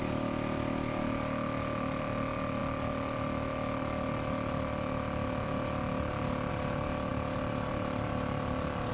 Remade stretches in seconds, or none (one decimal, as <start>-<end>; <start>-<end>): none